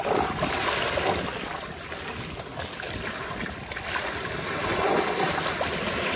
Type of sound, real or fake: real